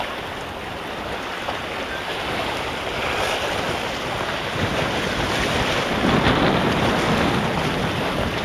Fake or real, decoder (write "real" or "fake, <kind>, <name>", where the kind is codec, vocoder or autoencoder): real